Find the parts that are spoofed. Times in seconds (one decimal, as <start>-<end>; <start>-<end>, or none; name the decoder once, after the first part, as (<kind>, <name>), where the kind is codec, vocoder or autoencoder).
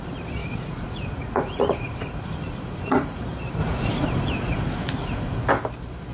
0.4-3.2 (vocoder, Vocos); 3.6-5.5